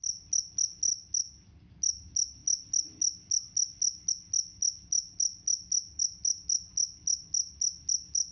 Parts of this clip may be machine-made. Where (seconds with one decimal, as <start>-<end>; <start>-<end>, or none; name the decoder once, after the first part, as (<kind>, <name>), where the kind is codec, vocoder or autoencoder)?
none